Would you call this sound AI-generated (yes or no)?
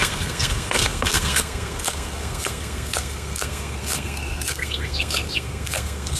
yes